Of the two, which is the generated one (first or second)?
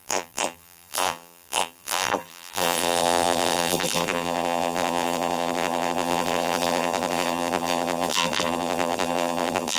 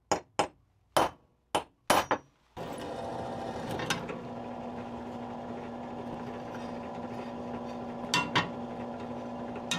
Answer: first